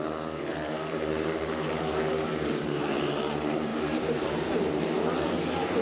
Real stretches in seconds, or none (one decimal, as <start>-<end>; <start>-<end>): none